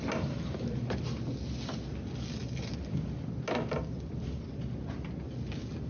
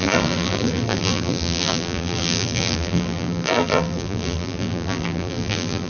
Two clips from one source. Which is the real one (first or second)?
first